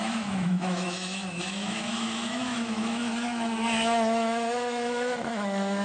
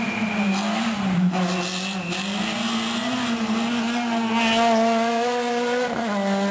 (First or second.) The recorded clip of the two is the second